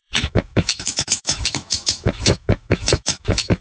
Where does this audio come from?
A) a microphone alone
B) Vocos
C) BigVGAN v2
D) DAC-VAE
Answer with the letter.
D